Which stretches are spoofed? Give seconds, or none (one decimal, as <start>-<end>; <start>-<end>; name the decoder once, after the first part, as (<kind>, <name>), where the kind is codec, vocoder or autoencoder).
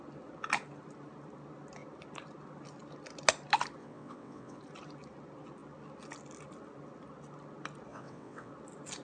3.8-4.6 (vocoder, WaveNeXt); 7.9-8.5